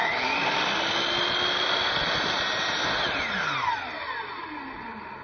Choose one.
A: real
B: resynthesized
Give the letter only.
A